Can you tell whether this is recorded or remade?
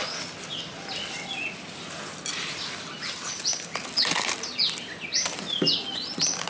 recorded